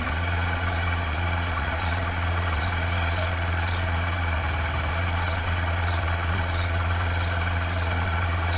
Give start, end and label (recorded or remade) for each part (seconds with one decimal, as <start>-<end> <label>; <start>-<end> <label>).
0.0-4.4 remade; 4.4-4.9 recorded; 4.9-8.6 remade